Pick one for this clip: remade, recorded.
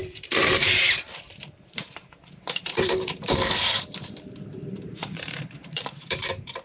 remade